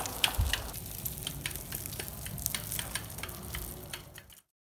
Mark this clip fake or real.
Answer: real